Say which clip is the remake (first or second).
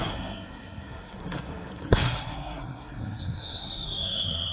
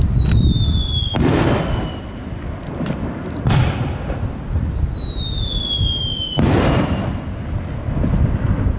first